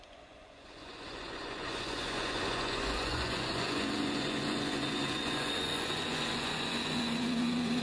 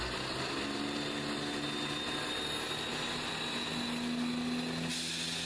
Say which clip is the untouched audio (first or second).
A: second